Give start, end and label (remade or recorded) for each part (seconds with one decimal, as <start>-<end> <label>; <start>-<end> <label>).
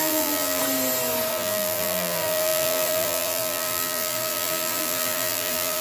0.0-0.6 remade; 0.6-1.3 recorded; 1.3-5.8 remade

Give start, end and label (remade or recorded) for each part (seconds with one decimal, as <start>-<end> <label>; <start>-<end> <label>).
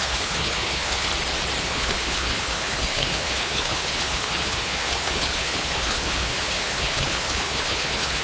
0.0-1.1 remade; 1.1-1.6 recorded; 1.6-8.2 remade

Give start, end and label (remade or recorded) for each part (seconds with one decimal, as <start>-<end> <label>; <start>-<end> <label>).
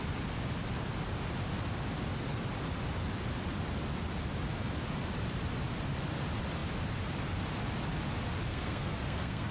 0.0-8.5 recorded; 8.5-9.5 remade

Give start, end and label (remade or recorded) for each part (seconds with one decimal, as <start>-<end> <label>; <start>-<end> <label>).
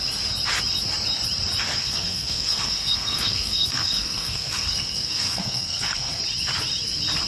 0.0-1.8 recorded; 1.8-6.2 remade; 6.2-7.3 recorded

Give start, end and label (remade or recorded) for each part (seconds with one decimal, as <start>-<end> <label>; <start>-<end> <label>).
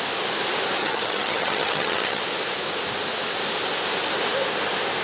0.0-0.8 recorded; 0.8-2.2 remade; 2.2-5.0 recorded